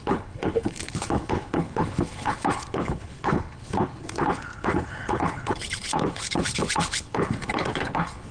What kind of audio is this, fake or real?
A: fake